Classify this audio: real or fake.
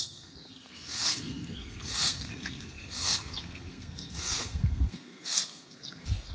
fake